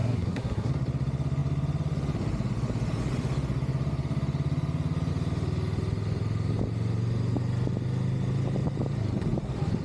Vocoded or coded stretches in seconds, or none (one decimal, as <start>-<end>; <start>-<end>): 0.0-0.7